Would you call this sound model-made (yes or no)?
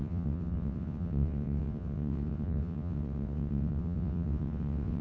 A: yes